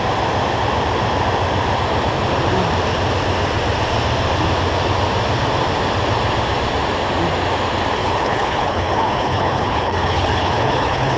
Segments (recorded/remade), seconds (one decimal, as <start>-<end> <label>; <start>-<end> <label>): 0.0-8.0 recorded; 8.0-11.2 remade